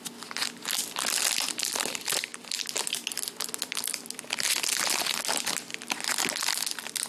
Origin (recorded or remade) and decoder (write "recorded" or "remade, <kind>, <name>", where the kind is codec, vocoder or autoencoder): recorded